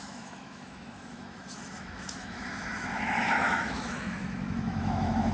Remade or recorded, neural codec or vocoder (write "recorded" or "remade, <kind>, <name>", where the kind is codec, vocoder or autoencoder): remade, autoencoder, DAC-VAE